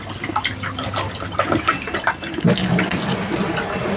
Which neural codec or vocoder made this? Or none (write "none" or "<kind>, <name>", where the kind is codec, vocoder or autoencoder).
vocoder, BigVGAN v2